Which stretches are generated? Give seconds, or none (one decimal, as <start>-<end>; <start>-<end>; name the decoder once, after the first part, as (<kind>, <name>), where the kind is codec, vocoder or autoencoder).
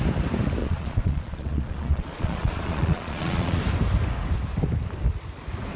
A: 0.6-3.6 (vocoder, Vocos)